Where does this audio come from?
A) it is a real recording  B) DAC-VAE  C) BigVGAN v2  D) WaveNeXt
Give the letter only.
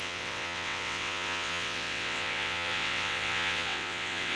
D